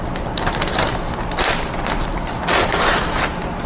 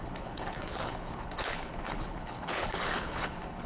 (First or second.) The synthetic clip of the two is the second